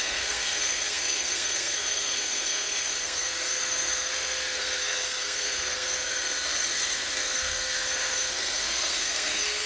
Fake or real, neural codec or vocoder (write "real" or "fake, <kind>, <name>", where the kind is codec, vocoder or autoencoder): fake, codec, SNAC